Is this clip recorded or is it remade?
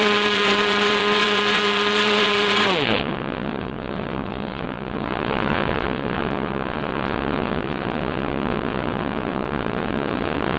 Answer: remade